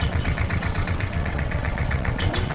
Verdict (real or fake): fake